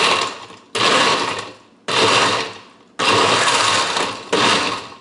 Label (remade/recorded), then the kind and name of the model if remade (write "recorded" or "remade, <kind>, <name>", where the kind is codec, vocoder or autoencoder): recorded